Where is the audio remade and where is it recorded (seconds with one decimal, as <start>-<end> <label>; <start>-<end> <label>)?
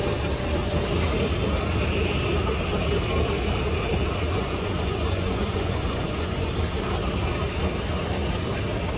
0.0-4.3 recorded; 4.3-6.5 remade; 6.5-9.0 recorded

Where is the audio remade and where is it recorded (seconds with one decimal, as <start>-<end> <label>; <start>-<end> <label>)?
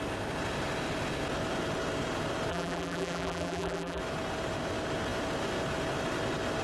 0.0-2.5 recorded; 2.5-4.0 remade; 4.0-6.6 recorded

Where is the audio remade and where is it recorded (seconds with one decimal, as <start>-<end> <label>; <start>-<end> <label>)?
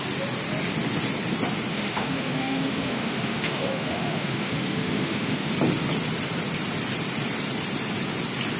0.0-1.7 recorded; 1.7-5.5 remade; 5.5-8.6 recorded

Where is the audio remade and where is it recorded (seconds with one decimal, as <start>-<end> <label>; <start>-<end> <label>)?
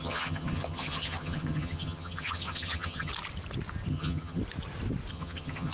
0.0-3.1 remade; 3.1-3.9 recorded; 3.9-4.4 remade; 4.4-5.1 recorded; 5.1-5.7 remade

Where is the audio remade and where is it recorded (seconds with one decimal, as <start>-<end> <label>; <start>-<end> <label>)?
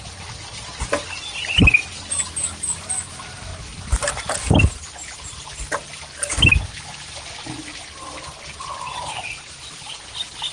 0.0-10.5 recorded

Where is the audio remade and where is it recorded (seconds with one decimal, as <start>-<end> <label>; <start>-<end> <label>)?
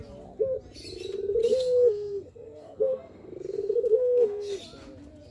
0.0-1.4 recorded; 1.4-4.6 remade; 4.6-5.3 recorded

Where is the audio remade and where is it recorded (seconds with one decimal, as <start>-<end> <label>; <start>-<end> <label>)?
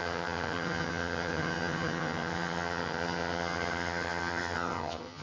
0.0-5.2 remade